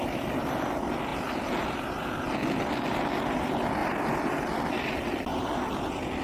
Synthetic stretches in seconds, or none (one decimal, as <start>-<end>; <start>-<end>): 1.1-1.6; 3.8-4.7; 5.3-5.8